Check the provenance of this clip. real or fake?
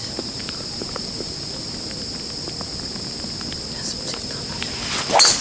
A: real